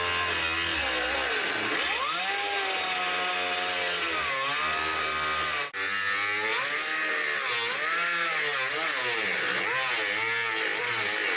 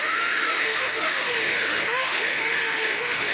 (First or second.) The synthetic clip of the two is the second